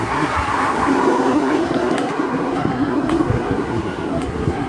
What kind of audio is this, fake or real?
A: fake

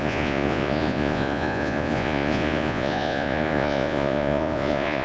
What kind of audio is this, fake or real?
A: fake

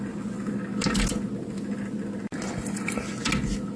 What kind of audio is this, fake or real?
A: real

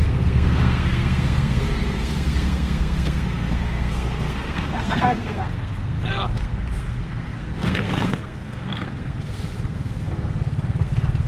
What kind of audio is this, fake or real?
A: fake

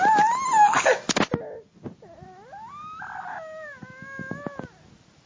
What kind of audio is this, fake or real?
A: real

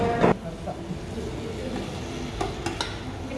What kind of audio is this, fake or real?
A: real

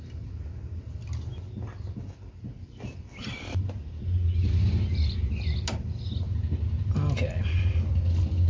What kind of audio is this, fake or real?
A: real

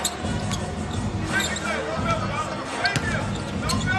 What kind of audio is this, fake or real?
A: real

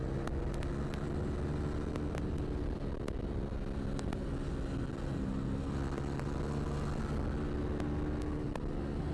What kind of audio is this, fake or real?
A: real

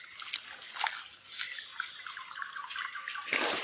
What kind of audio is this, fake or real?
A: real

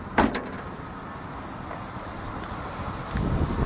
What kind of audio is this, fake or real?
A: real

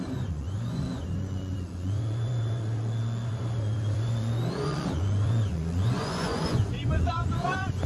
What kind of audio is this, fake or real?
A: fake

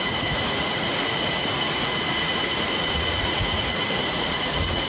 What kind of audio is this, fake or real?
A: fake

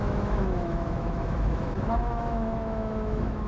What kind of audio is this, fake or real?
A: fake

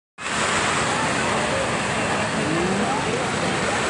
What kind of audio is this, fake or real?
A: real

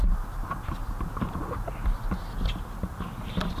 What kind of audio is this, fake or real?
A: real